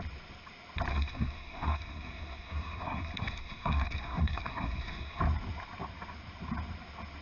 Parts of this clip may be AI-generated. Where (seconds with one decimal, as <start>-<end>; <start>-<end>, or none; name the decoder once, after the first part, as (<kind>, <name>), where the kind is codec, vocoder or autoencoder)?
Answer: 0.9-5.2 (codec, SNAC)